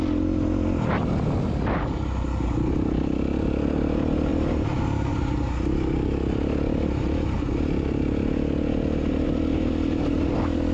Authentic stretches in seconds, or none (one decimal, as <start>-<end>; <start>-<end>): 0.0-10.7